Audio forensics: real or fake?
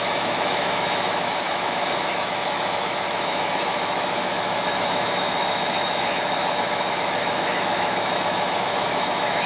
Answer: fake